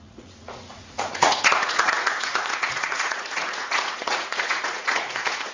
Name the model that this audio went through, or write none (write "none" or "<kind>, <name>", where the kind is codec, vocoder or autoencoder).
vocoder, Vocos